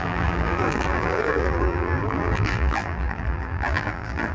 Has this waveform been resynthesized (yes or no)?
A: yes